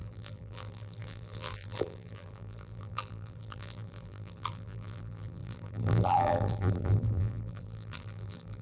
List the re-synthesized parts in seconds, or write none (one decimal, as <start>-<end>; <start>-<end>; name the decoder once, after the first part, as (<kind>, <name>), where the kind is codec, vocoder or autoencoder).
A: 0.0-8.6 (vocoder, BigVGAN v2)